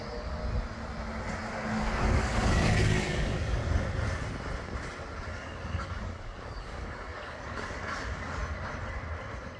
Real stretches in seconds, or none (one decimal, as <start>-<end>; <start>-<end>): 0.4-1.8; 3.6-5.2; 8.4-9.6